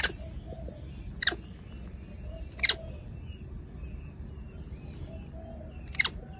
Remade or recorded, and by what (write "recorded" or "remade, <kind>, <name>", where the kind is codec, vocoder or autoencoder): recorded